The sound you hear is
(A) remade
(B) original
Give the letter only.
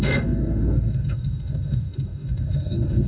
A